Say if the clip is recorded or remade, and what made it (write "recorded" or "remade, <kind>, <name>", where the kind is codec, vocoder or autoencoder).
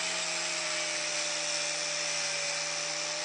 recorded